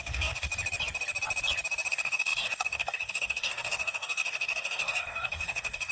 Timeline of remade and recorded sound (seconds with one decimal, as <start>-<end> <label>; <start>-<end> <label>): 0.0-0.5 remade; 0.5-1.9 recorded; 1.9-5.9 remade